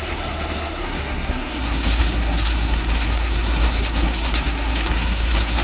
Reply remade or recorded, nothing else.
remade